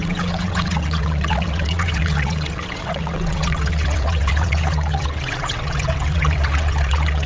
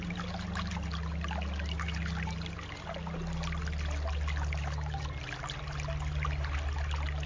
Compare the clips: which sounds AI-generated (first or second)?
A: first